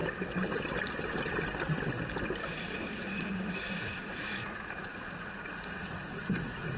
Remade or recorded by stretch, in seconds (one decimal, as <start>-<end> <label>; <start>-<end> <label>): 0.0-2.5 recorded; 2.5-6.8 remade